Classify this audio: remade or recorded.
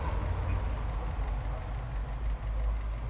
recorded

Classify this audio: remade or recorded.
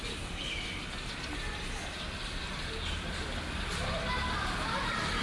recorded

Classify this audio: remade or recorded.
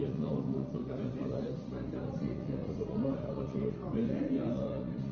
remade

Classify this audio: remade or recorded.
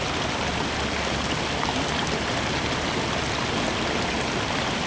recorded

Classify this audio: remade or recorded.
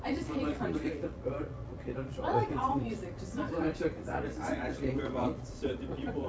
remade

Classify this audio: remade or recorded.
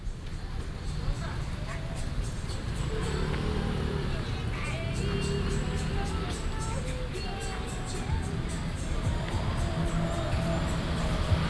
recorded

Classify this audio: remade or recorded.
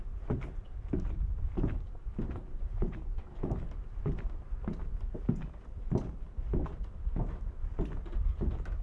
recorded